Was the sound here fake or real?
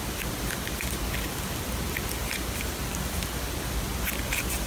real